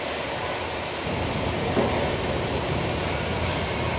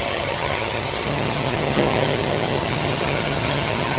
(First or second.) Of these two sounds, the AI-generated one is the second